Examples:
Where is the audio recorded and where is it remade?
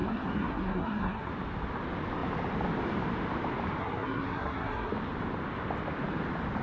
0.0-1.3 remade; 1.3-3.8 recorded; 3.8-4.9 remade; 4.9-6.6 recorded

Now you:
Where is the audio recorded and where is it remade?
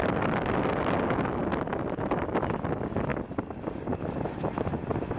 0.0-5.2 recorded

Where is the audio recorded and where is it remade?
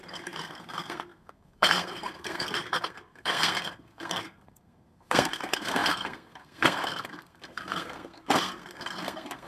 0.0-9.5 remade